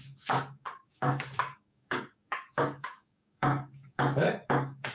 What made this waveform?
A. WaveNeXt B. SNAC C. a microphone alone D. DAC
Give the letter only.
D